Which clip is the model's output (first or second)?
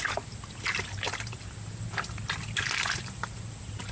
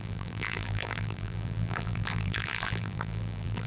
second